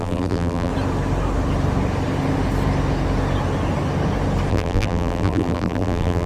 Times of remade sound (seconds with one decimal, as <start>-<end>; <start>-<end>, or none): 0.0-0.7; 4.5-6.3